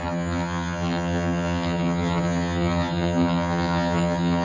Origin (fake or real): fake